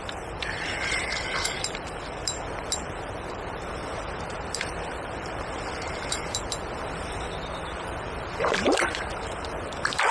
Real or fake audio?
fake